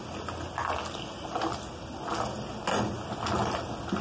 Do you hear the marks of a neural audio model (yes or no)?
no